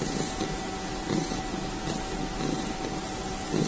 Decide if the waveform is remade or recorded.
recorded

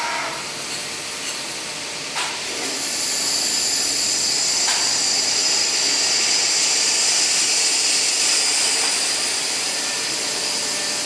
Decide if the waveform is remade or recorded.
recorded